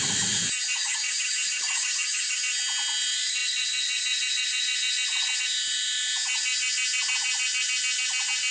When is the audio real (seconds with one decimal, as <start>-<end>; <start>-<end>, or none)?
0.0-0.7; 2.4-8.5